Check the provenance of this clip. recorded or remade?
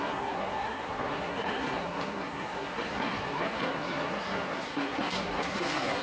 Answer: remade